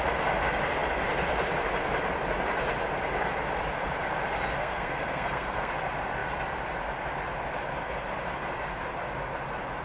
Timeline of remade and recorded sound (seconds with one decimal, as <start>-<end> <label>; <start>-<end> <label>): 0.0-4.6 recorded; 4.6-5.7 remade; 5.7-9.8 recorded